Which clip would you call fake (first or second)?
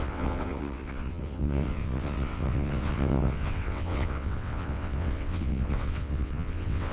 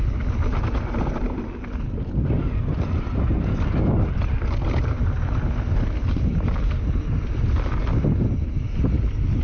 first